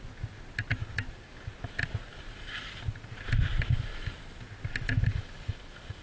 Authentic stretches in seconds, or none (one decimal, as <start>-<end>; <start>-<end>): 0.0-6.0